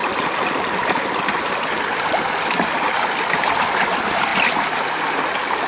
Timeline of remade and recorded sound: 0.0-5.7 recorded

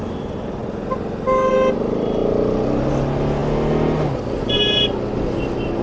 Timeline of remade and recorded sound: 0.0-5.8 recorded